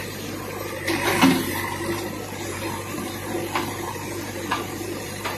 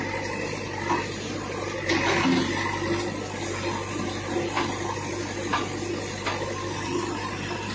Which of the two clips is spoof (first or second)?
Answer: first